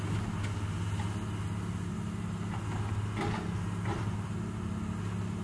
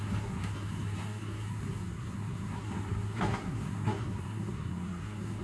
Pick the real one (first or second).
first